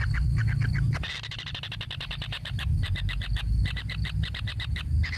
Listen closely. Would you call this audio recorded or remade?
recorded